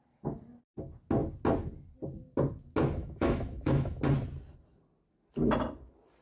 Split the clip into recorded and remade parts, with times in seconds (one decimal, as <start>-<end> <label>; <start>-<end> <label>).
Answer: 0.0-3.0 recorded; 3.0-4.0 remade; 4.0-6.2 recorded